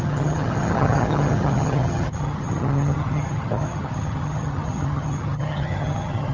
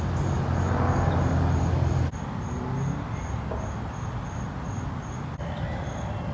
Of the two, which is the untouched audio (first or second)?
second